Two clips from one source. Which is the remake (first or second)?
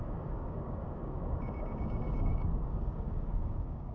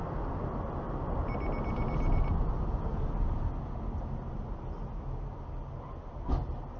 first